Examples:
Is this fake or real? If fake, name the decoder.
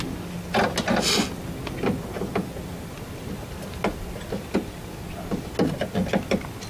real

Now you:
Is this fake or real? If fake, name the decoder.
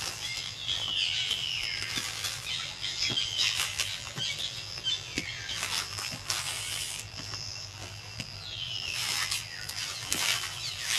fake, vocoder, BigVGAN v2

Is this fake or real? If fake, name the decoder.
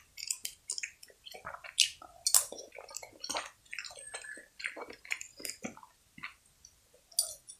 real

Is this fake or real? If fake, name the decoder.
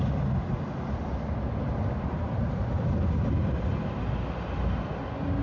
real